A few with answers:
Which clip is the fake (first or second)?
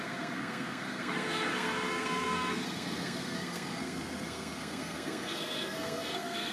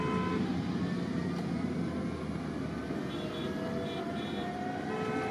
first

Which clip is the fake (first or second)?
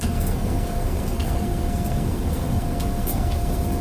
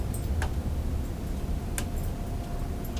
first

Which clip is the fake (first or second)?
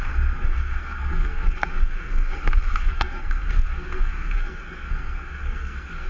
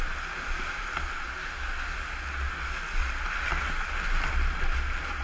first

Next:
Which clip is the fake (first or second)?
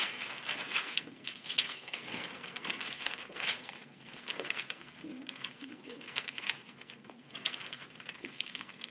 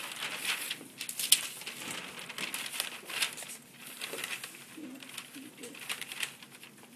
first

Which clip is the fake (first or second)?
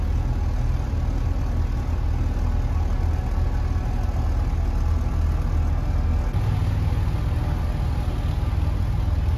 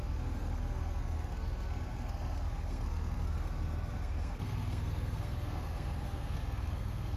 second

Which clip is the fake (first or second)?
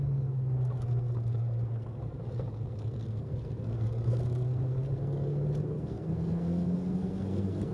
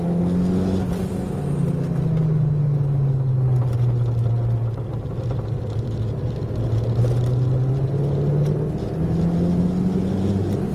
first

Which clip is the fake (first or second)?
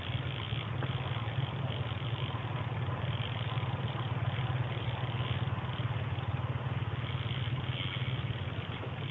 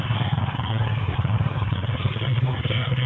second